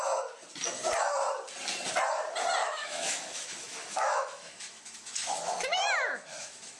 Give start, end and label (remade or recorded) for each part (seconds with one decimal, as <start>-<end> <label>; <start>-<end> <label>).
0.0-2.6 recorded; 2.6-6.8 remade